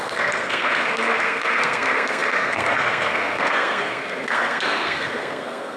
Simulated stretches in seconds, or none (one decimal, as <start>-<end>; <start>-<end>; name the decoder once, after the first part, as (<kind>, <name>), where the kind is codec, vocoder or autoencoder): 0.0-5.8 (codec, SNAC)